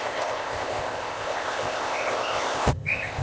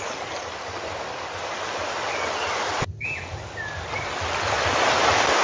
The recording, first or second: second